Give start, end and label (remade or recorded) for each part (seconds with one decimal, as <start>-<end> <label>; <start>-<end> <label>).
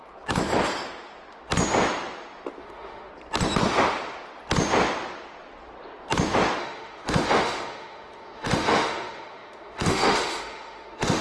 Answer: 0.0-2.6 recorded; 2.6-3.1 remade; 3.1-6.6 recorded; 6.6-11.2 remade